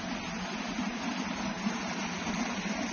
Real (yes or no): yes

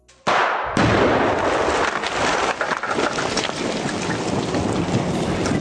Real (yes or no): yes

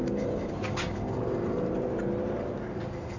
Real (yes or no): yes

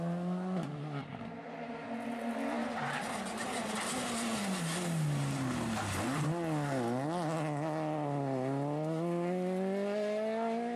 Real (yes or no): yes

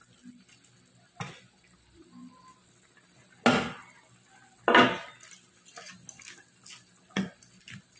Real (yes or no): yes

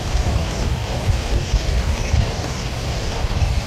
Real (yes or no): no